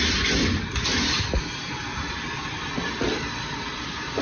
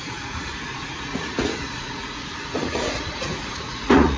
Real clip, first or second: first